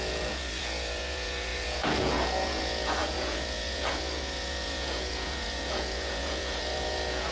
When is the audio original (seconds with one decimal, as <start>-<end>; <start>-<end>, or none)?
none